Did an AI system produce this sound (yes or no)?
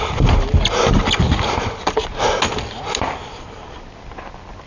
no